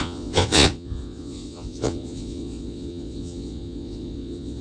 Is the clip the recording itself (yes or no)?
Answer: no